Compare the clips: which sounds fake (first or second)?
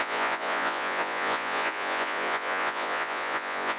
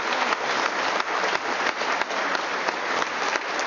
first